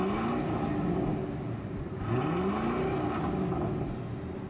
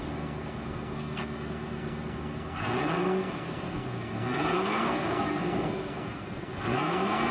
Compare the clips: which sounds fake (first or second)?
second